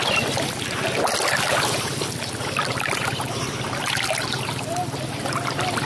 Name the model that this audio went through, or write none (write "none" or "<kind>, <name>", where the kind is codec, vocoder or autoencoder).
none